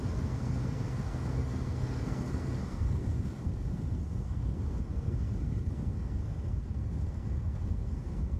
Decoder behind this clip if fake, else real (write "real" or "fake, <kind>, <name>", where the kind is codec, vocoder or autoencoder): fake, codec, SNAC